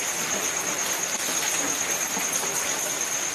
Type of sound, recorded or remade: recorded